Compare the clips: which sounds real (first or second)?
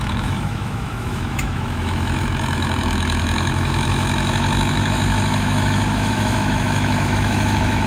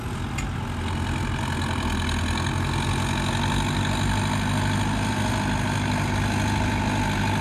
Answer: second